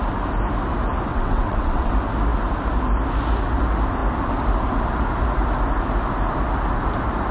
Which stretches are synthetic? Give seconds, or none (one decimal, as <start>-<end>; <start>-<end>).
1.1-1.9